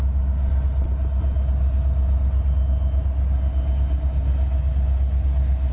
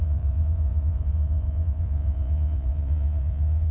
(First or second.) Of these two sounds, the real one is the first